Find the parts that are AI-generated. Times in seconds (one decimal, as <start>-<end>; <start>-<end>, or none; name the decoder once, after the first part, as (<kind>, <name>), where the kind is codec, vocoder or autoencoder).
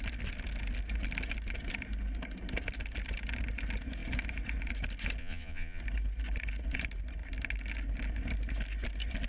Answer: 5.2-5.8 (vocoder, Vocos)